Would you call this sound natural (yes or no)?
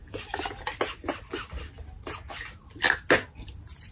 yes